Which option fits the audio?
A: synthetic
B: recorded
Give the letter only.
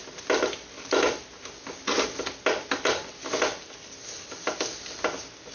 B